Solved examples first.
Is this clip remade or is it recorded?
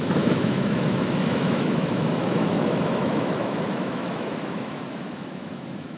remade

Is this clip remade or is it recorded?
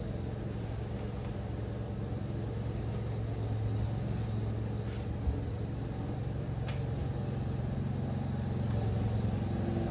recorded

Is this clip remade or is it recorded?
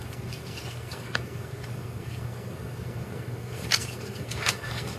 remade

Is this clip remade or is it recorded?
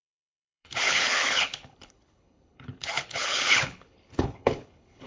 remade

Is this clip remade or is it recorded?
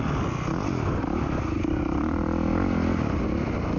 recorded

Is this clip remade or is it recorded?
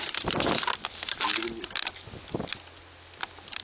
recorded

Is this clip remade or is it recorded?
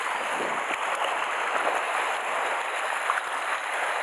recorded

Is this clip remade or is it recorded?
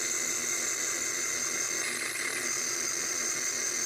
recorded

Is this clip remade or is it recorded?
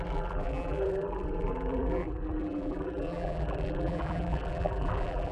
remade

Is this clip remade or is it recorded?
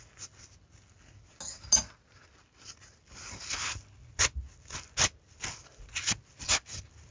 recorded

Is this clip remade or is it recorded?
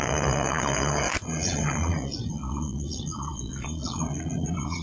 remade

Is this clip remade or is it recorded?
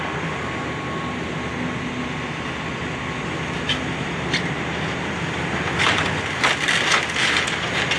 recorded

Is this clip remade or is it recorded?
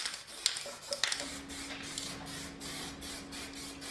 recorded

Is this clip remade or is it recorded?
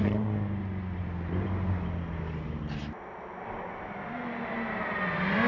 recorded